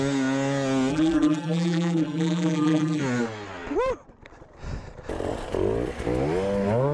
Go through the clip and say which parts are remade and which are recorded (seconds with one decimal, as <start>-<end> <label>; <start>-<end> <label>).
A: 0.0-0.9 recorded; 0.9-3.0 remade; 3.0-6.9 recorded

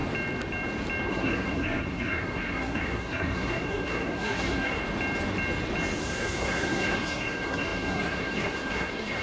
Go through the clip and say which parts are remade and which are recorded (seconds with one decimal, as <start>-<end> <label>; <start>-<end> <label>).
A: 0.0-1.1 recorded; 1.1-4.8 remade; 4.8-6.0 recorded; 6.0-9.2 remade

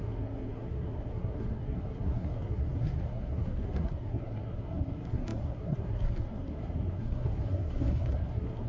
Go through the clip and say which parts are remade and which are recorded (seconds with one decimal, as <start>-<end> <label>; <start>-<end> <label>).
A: 0.0-8.7 remade

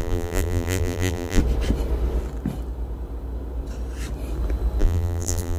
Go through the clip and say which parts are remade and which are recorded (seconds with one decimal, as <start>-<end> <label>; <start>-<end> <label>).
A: 0.0-1.4 remade; 1.4-4.8 recorded; 4.8-5.6 remade

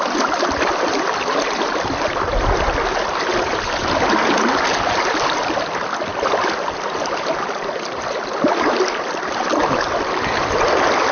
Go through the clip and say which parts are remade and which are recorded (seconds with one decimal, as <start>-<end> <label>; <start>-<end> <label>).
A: 0.0-11.1 recorded

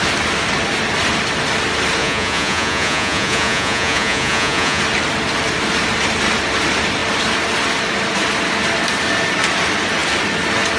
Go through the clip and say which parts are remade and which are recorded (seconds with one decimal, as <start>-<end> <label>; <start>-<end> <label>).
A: 0.0-2.0 recorded; 2.0-4.8 remade; 4.8-10.8 recorded

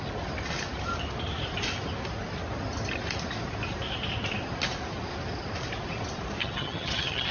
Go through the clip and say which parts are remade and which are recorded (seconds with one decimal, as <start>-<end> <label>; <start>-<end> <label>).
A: 0.0-6.4 recorded; 6.4-7.3 remade

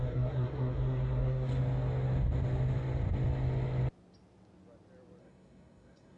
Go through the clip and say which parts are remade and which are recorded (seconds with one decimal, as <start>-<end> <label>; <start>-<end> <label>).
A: 0.0-1.5 remade; 1.5-5.2 recorded; 5.2-6.2 remade